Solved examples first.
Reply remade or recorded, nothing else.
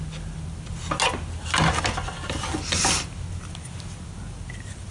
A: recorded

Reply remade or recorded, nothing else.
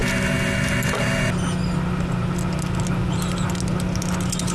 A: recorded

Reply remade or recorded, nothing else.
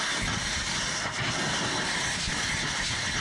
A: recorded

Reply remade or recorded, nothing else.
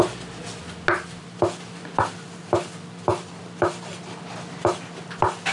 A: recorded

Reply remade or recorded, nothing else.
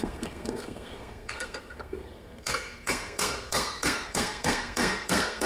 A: remade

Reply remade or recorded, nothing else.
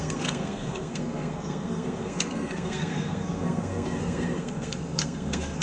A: remade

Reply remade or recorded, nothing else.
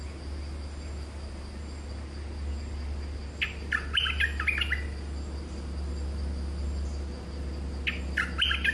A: recorded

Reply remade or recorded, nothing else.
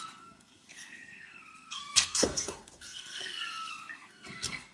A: remade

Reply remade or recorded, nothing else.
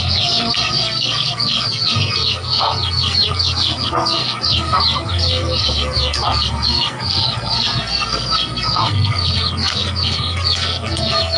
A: remade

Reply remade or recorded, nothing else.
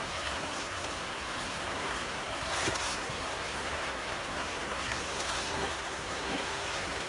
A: remade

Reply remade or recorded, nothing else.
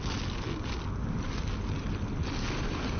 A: recorded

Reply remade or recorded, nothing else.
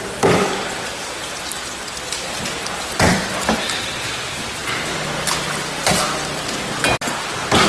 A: recorded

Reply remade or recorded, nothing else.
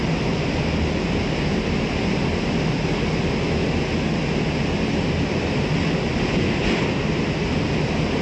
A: recorded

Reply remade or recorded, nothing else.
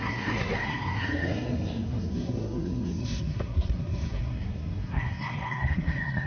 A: remade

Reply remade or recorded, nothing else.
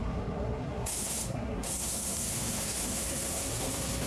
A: remade